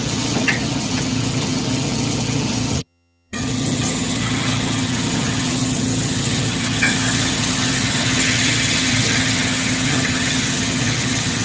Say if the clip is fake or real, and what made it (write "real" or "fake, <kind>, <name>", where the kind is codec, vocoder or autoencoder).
fake, vocoder, HiFi-GAN